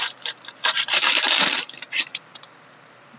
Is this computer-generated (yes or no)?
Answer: yes